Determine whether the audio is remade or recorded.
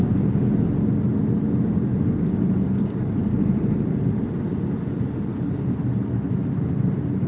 recorded